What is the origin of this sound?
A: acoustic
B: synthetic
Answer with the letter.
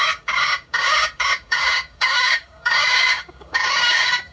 B